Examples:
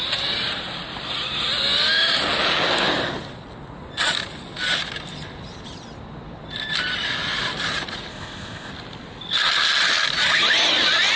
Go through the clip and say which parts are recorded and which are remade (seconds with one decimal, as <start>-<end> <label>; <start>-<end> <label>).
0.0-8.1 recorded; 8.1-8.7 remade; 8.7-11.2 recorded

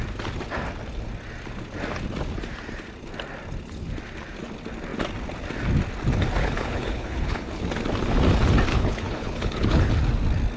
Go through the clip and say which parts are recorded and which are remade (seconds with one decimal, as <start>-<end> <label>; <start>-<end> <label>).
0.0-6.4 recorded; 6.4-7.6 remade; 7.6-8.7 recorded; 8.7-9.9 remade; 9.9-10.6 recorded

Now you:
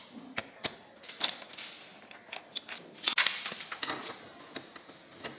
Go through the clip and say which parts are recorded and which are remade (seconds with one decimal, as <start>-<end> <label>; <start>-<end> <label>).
0.0-5.4 recorded

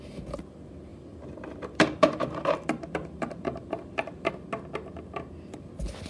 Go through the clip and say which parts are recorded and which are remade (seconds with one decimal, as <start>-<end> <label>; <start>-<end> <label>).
0.0-0.9 recorded; 0.9-4.3 remade; 4.3-6.1 recorded

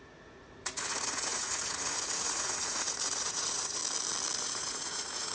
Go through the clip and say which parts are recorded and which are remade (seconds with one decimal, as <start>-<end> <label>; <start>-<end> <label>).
0.0-3.8 remade; 3.8-4.4 recorded; 4.4-5.3 remade

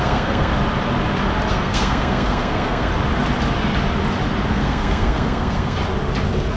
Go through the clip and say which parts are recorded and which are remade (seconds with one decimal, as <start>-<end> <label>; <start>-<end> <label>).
0.0-0.5 remade; 0.5-1.5 recorded; 1.5-2.9 remade; 2.9-4.5 recorded; 4.5-5.8 remade; 5.8-6.6 recorded

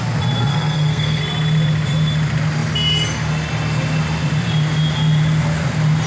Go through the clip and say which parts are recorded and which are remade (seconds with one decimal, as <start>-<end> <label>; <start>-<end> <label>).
0.0-0.5 recorded; 0.5-1.2 remade; 1.2-6.1 recorded